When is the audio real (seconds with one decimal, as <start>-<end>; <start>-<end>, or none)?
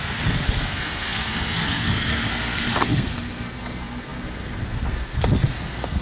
none